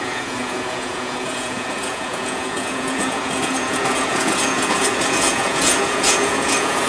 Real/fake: fake